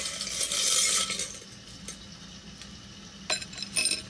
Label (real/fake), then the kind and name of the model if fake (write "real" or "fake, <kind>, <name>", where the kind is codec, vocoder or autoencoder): real